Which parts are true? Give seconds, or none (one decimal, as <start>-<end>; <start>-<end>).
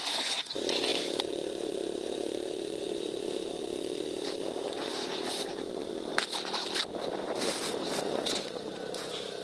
6.1-8.0